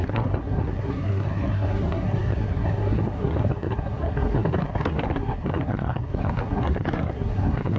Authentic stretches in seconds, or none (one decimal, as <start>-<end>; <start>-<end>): none